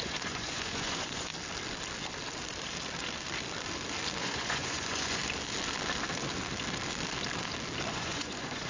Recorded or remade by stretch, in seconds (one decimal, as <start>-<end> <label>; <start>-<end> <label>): 0.0-1.3 remade; 1.3-4.2 recorded; 4.2-5.2 remade; 5.2-7.9 recorded; 7.9-8.7 remade